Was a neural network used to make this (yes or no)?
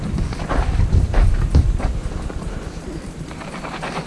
no